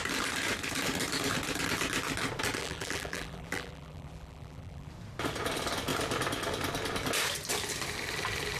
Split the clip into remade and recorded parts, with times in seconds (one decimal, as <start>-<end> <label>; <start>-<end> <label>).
0.0-2.6 recorded; 2.6-4.9 remade; 4.9-8.6 recorded